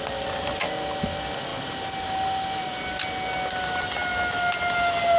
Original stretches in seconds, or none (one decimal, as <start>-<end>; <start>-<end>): 0.0-5.2